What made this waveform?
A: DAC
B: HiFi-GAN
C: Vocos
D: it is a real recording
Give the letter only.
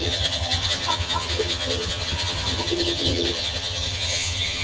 B